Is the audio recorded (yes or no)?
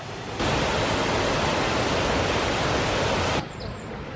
yes